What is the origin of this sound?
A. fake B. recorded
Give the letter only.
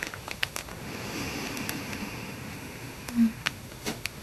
A